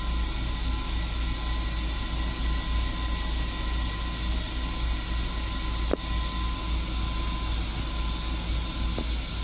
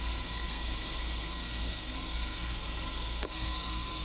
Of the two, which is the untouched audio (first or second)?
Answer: first